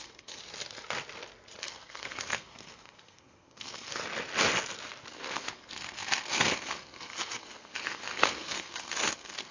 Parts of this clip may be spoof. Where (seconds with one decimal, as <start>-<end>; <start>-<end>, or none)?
0.0-0.4; 1.6-4.0; 5.1-9.5